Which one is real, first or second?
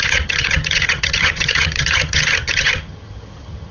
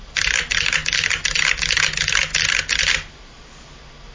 second